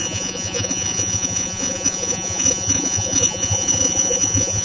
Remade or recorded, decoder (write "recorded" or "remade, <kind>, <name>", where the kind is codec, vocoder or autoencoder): remade, vocoder, Vocos